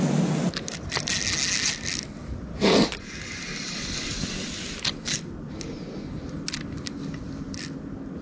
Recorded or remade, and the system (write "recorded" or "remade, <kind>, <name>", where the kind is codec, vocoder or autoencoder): recorded